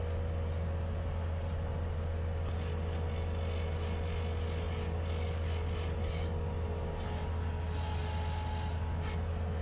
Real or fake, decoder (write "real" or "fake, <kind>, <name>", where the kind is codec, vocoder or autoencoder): real